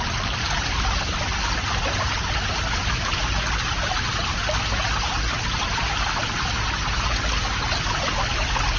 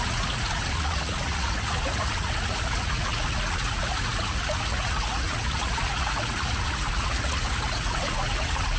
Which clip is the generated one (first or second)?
second